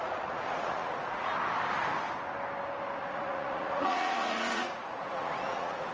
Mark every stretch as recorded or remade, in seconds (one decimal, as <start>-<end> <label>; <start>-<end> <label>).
0.0-1.3 remade; 1.3-3.0 recorded; 3.0-5.9 remade